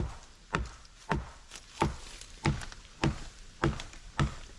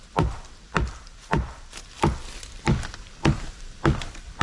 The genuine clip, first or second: first